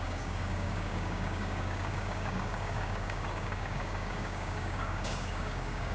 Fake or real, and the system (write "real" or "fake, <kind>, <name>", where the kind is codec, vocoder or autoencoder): fake, codec, DAC